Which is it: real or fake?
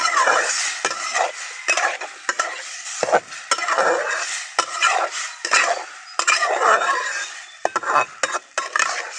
real